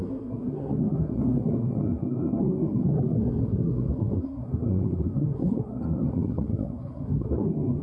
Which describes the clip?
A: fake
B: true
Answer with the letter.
A